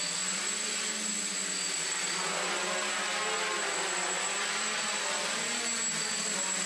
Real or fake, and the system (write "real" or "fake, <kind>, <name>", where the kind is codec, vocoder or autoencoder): real